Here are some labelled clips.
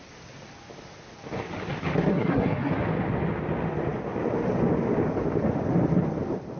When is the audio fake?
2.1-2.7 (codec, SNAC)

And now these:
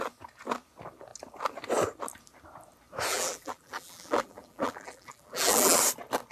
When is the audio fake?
3.1-5.8 (vocoder, BigVGAN v2)

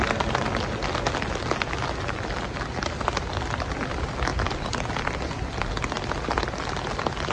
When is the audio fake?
none